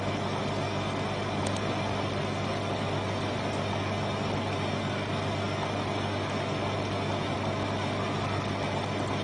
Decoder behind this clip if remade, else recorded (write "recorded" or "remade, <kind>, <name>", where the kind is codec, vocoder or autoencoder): recorded